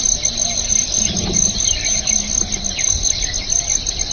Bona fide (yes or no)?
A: yes